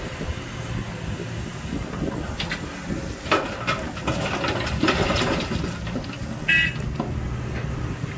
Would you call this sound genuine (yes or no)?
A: yes